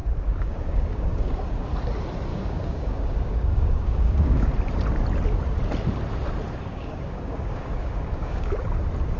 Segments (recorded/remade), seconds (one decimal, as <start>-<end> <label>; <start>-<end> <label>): 0.0-1.7 remade; 1.7-2.3 recorded; 2.3-4.5 remade; 4.5-6.7 recorded; 6.7-8.5 remade; 8.5-9.2 recorded